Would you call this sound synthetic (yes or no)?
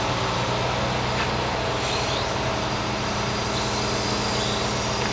no